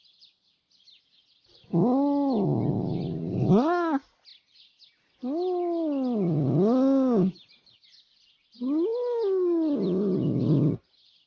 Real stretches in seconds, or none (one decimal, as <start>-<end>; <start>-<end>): 0.0-11.3